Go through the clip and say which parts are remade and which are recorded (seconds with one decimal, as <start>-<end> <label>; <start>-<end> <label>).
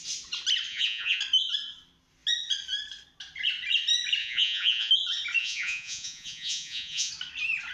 0.0-0.7 recorded; 0.7-1.2 remade; 1.2-4.2 recorded; 4.2-4.9 remade; 4.9-5.4 recorded; 5.4-7.1 remade; 7.1-7.7 recorded